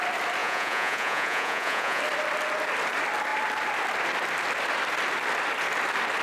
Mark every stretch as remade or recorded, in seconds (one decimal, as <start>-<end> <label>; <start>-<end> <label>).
0.0-0.4 recorded; 0.4-2.0 remade; 2.0-6.2 recorded